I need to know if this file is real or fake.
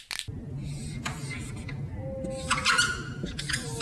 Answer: real